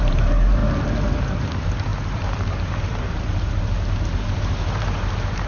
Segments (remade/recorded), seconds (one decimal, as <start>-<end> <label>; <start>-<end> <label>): 0.0-0.6 remade; 0.6-1.4 recorded; 1.4-5.5 remade